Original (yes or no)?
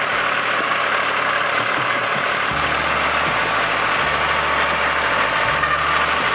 yes